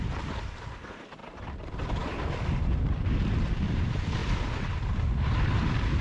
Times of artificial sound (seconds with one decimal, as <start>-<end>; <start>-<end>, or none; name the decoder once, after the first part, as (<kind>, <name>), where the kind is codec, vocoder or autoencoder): 1.2-3.8 (vocoder, BigVGAN v2); 4.2-6.0